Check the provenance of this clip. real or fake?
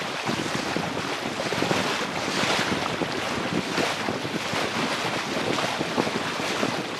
real